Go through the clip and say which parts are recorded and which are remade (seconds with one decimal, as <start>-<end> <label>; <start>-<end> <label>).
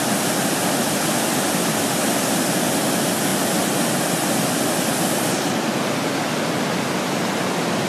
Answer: 0.0-7.9 recorded